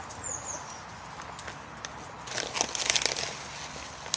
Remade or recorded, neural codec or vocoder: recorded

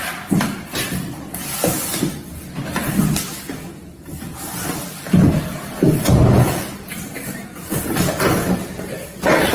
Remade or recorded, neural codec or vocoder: recorded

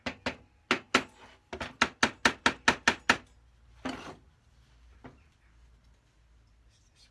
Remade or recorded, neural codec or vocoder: recorded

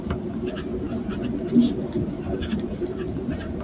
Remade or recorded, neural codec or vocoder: remade, vocoder, BigVGAN v2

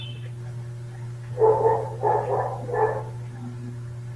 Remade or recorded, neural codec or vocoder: recorded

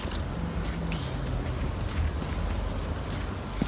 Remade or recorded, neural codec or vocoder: recorded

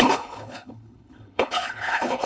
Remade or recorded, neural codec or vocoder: remade, codec, HILCodec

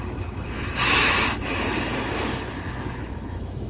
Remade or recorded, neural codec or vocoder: remade, autoencoder, DAC-VAE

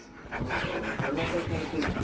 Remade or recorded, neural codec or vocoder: recorded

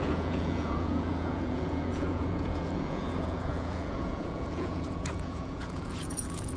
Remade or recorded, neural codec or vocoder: remade, vocoder, Vocos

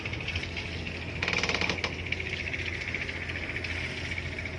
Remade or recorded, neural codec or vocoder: recorded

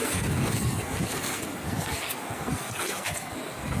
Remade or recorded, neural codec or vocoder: remade, codec, SNAC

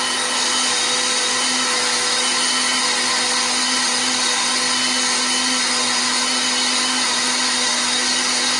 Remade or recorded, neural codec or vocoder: recorded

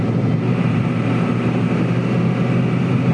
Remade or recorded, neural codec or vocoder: recorded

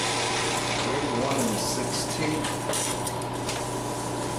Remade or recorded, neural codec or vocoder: recorded